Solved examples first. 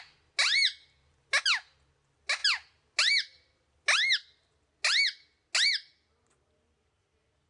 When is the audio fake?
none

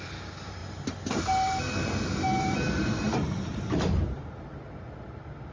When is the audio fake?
2.3-4.7 (vocoder, BigVGAN v2)